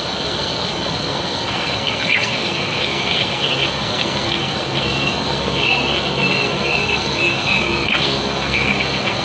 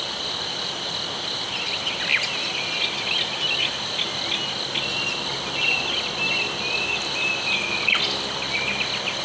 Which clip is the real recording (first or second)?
second